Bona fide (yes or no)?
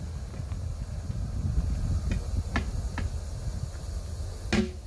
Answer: yes